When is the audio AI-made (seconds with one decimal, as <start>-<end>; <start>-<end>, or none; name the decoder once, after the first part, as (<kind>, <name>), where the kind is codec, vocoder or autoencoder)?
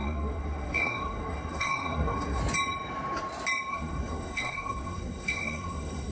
0.0-2.4 (codec, SNAC); 3.7-6.1